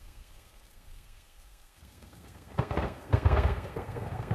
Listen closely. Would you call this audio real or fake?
fake